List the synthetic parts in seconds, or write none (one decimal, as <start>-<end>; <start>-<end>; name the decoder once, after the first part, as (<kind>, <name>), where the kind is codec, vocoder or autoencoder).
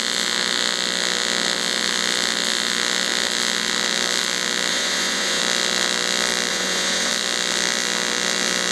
4.7-5.4 (vocoder, Vocos); 6.5-7.1